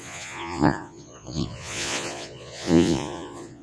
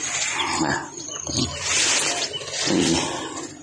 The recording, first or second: second